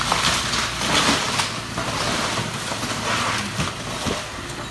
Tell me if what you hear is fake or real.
real